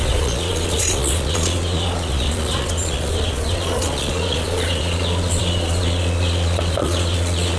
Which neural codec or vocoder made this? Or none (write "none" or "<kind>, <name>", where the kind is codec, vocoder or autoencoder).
vocoder, Vocos